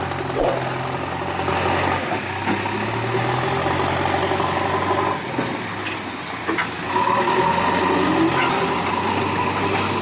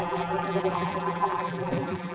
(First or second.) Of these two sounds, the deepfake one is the second